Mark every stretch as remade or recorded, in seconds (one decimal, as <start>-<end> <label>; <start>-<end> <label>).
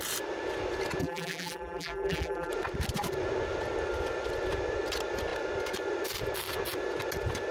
0.0-1.0 recorded; 1.0-2.5 remade; 2.5-7.5 recorded